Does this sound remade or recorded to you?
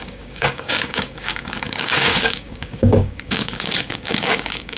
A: remade